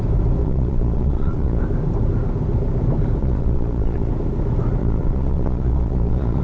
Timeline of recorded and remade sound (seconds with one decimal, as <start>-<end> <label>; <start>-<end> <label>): 0.0-0.4 recorded; 0.4-1.6 remade; 1.6-3.2 recorded; 3.2-4.1 remade; 4.1-4.8 recorded; 4.8-6.4 remade